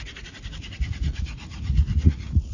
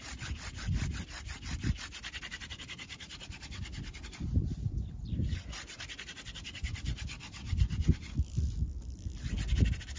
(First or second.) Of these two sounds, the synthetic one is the first